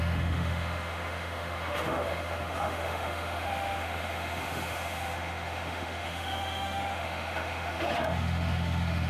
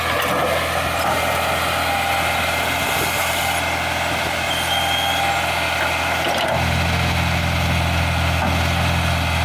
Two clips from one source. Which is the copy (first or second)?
first